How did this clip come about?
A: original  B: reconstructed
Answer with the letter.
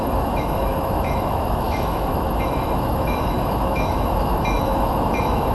B